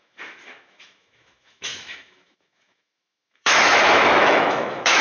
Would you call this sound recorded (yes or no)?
no